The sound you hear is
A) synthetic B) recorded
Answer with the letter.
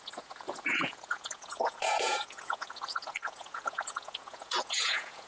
A